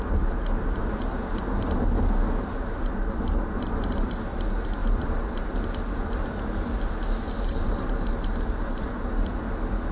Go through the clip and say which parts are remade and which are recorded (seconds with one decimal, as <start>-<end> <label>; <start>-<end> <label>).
0.0-9.9 recorded